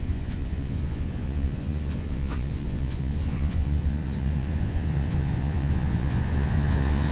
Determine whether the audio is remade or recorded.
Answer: remade